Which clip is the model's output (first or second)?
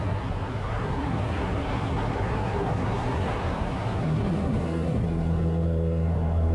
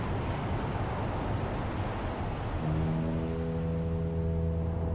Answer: first